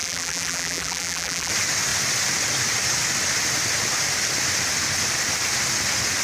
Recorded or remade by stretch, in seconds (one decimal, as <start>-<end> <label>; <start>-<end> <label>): 0.0-1.5 remade; 1.5-6.2 recorded

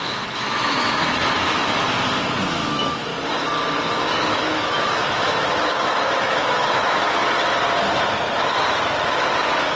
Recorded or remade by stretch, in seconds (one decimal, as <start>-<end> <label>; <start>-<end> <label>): 0.0-1.7 remade; 1.7-2.5 recorded; 2.5-3.1 remade; 3.1-4.1 recorded; 4.1-7.2 remade; 7.2-9.4 recorded; 9.4-9.8 remade

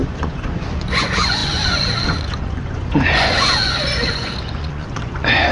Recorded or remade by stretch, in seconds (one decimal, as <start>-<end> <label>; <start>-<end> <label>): 0.0-5.5 remade

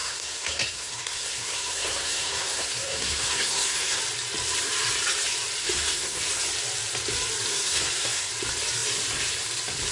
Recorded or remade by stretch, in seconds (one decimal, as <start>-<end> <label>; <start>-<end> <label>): 0.0-4.0 remade; 4.0-5.6 recorded; 5.6-6.2 remade; 6.2-7.5 recorded; 7.5-8.3 remade; 8.3-9.9 recorded

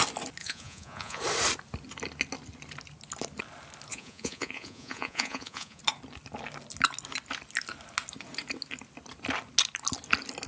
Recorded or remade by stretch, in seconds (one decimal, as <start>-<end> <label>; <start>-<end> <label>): 0.0-0.4 recorded; 0.4-1.2 remade; 1.2-3.9 recorded; 3.9-5.8 remade; 5.8-10.5 recorded